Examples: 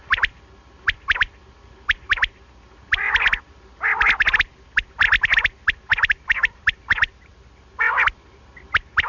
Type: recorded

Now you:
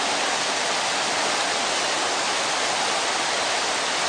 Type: recorded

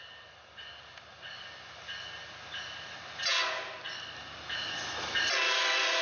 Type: recorded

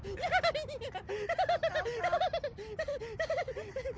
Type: recorded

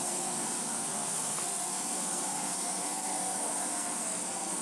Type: remade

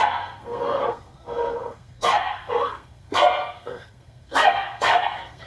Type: remade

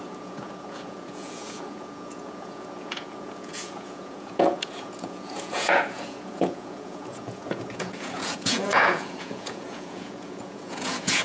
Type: remade